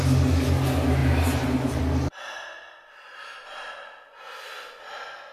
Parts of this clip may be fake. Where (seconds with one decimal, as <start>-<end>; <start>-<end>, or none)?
1.0-1.8

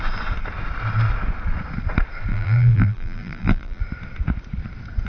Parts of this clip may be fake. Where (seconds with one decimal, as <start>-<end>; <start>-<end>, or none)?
2.3-3.8